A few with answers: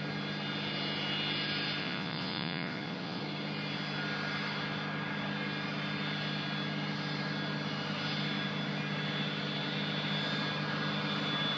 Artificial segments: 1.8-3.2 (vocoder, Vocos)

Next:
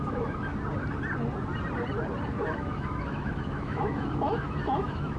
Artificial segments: 0.0-0.5 (autoencoder, DAC-VAE); 2.3-5.2

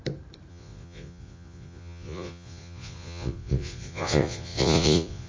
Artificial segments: 0.5-5.3 (vocoder, Vocos)

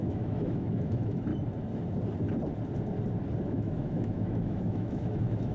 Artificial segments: 0.0-1.3 (autoencoder, DAC-VAE); 3.4-5.5

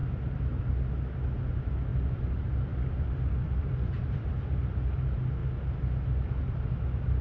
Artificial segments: 1.9-4.3 (vocoder, BigVGAN v2)

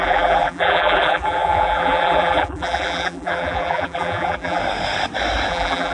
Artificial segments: 0.0-4.6 (vocoder, BigVGAN v2); 5.5-5.9